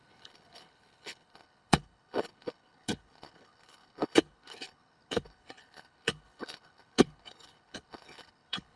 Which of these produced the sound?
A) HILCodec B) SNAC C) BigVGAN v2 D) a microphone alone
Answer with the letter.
A